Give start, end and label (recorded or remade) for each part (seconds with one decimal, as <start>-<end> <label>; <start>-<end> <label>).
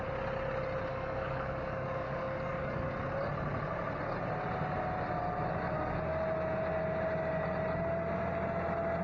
0.0-0.9 recorded; 0.9-2.9 remade; 2.9-9.0 recorded